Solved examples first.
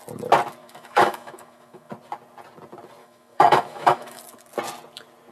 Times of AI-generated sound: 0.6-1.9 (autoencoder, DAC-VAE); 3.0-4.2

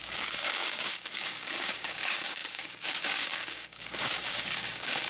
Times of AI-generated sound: 0.0-5.1 (codec, DAC)

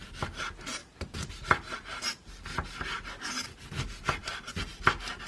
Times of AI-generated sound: 0.8-3.7 (vocoder, BigVGAN v2)

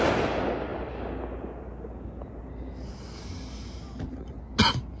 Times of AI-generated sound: none

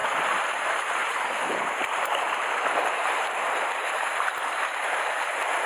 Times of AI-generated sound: 0.0-5.7 (vocoder, BigVGAN v2)